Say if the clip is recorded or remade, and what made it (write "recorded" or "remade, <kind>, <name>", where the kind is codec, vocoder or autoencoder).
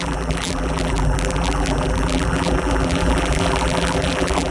remade, vocoder, BigVGAN v2